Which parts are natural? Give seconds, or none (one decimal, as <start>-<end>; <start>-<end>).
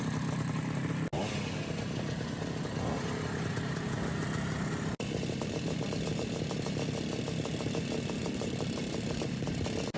0.0-8.2; 9.6-10.0